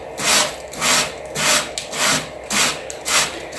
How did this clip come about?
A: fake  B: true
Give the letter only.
B